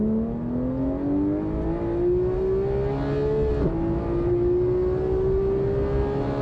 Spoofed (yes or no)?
no